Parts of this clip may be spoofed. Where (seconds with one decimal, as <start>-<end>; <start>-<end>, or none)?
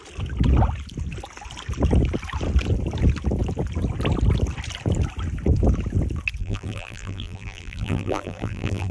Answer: 6.4-8.9